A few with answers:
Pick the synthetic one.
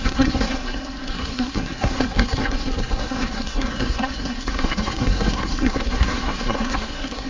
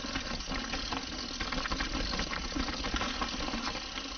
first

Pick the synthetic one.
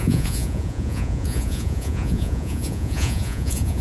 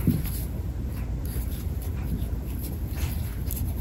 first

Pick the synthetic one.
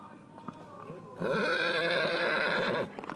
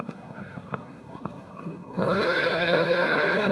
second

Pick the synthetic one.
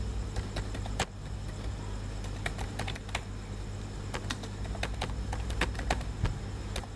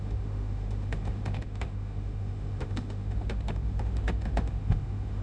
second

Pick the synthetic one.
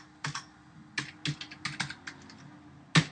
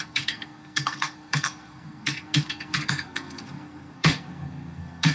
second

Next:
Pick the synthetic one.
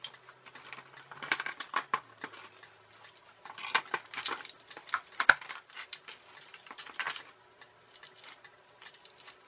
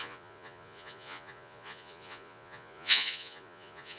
second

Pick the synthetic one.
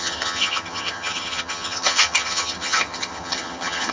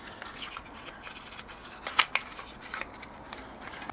first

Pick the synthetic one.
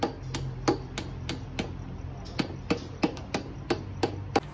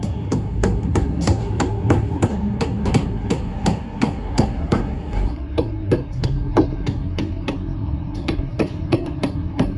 second